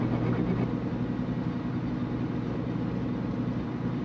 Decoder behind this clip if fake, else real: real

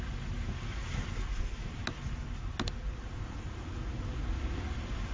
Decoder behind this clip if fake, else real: real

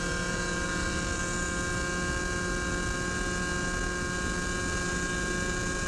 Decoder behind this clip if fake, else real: real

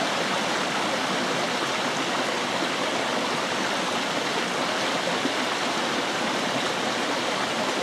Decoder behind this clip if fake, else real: real